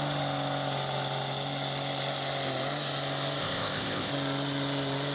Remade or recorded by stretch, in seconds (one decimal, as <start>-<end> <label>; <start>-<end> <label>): 0.0-3.4 recorded; 3.4-4.1 remade; 4.1-5.1 recorded